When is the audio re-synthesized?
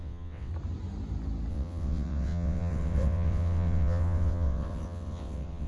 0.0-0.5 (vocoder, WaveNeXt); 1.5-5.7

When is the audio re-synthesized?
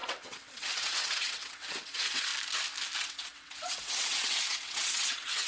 0.0-2.3 (vocoder, WaveNeXt); 3.0-5.5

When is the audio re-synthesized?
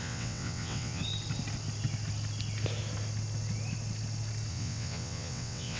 0.0-1.0 (vocoder, WaveNeXt); 4.5-5.8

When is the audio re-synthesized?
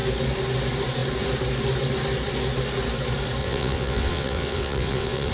3.4-5.3 (vocoder, WaveNeXt)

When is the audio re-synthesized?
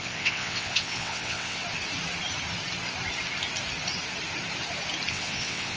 0.0-1.6 (vocoder, WaveNeXt); 5.1-5.8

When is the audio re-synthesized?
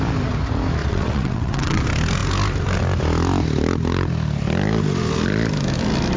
0.8-1.8 (vocoder, WaveNeXt)